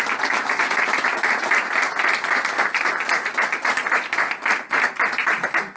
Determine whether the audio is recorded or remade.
recorded